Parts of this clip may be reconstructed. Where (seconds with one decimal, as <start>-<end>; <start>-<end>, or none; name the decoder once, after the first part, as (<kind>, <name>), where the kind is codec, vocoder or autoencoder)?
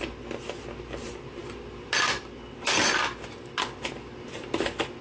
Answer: none